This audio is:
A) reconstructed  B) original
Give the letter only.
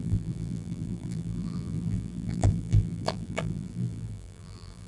A